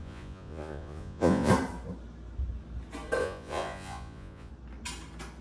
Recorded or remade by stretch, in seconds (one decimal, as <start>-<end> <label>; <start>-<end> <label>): 0.0-1.5 remade; 1.5-3.2 recorded; 3.2-4.5 remade; 4.5-5.4 recorded